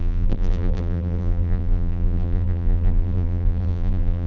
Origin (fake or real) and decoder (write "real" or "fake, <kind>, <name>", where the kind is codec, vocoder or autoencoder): fake, vocoder, BigVGAN v2